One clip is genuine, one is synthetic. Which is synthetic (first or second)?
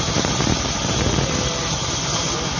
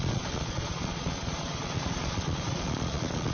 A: second